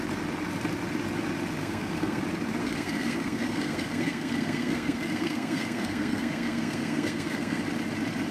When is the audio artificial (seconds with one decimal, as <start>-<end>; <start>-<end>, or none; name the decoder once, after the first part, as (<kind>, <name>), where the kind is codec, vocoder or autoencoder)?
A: 1.6-2.2 (codec, SNAC); 2.6-7.6